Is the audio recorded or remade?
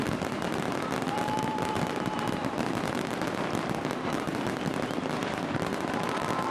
remade